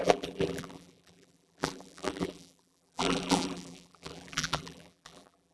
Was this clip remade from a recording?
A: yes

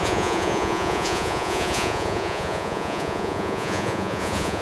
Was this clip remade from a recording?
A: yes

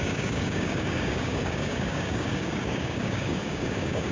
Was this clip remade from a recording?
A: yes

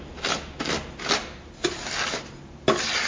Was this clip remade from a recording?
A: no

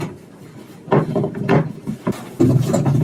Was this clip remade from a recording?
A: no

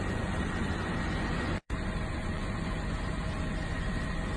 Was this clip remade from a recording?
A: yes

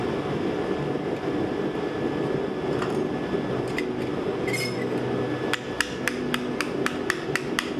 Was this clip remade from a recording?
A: no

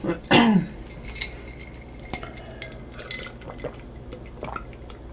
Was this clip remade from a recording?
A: no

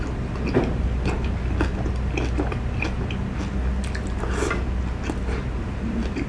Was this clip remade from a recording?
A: no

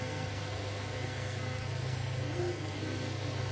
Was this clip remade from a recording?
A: yes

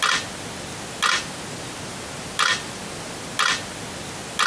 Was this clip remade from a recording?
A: no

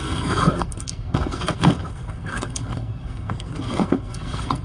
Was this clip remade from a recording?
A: yes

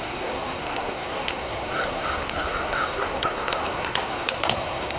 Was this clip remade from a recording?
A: yes